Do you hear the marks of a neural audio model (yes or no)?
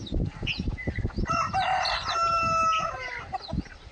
no